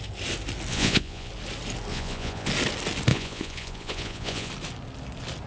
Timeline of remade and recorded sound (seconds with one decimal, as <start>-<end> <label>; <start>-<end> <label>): 0.0-0.7 recorded; 0.7-1.3 remade; 1.3-1.9 recorded; 1.9-2.5 remade; 2.5-3.1 recorded; 3.1-4.5 remade; 4.5-5.5 recorded